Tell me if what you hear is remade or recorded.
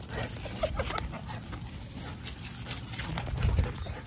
recorded